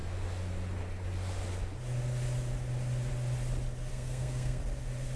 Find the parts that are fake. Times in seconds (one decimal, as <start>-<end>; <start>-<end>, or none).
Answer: 3.9-4.6